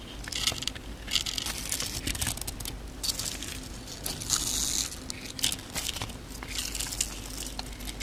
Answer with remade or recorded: recorded